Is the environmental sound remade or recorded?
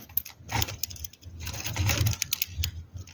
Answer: recorded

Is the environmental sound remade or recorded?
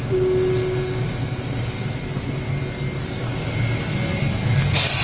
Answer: recorded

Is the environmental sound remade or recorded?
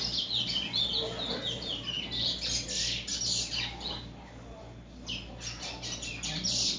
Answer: recorded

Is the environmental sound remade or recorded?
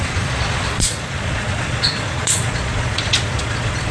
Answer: remade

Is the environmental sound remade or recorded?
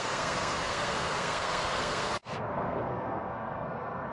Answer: remade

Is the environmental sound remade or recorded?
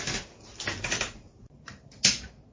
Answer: recorded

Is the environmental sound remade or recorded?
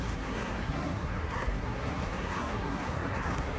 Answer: remade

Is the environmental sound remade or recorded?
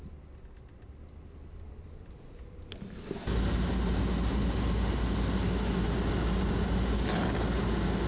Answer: recorded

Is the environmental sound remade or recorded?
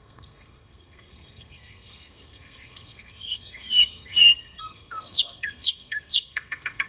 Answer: remade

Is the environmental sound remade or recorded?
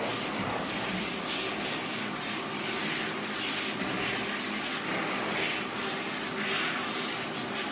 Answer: recorded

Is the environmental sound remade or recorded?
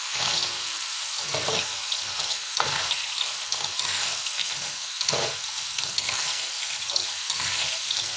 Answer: remade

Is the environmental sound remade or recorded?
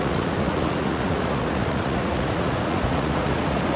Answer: remade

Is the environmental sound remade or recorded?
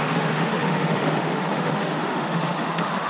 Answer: remade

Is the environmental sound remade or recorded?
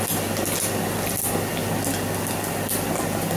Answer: recorded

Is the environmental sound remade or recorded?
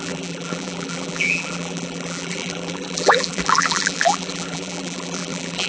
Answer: remade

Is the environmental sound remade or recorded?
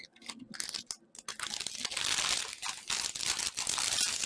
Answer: recorded